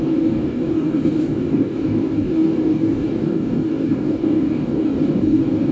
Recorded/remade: remade